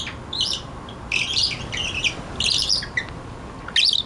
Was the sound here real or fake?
real